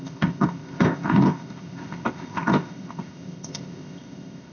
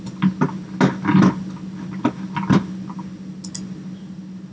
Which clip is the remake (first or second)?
first